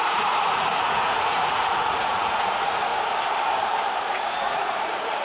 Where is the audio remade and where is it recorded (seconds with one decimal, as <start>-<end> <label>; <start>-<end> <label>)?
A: 0.0-2.9 remade; 2.9-4.0 recorded; 4.0-5.2 remade